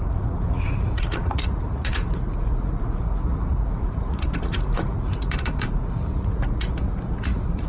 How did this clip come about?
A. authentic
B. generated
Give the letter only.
B